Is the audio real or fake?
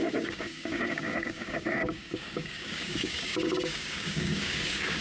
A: fake